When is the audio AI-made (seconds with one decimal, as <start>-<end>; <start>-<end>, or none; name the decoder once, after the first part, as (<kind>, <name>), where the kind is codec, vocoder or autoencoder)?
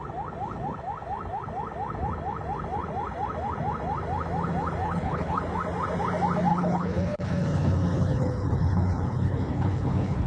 4.8-5.4 (codec, HILCodec); 6.5-10.3